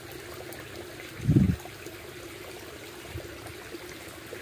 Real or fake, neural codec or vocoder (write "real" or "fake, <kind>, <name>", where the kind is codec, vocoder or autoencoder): real